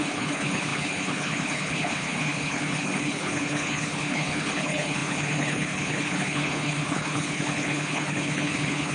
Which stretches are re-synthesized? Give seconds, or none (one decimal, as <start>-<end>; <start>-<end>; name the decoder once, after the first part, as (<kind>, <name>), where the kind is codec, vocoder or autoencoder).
0.0-8.9 (codec, HILCodec)